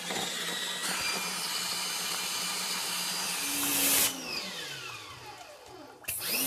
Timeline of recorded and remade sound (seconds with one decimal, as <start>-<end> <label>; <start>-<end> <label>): 0.0-6.5 recorded